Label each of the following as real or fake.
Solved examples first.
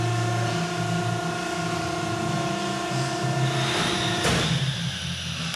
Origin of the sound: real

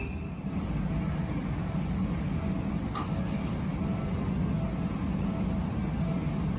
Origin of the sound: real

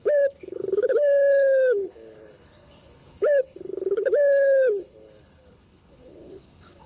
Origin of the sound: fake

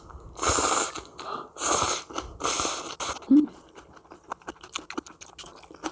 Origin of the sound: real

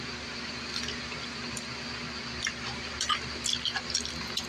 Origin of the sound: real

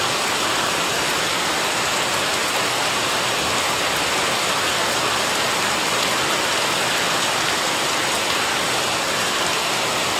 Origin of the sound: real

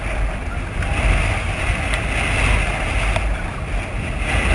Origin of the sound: real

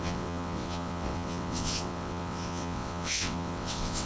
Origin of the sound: fake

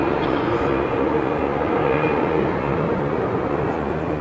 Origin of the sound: fake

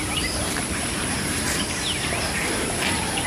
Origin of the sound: fake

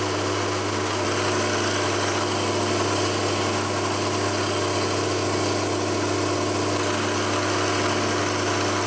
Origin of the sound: real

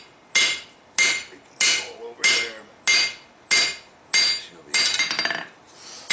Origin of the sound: real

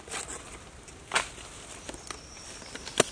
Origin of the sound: real